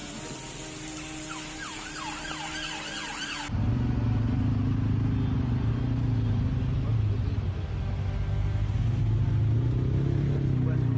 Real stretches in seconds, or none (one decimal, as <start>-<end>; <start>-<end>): 0.0-11.0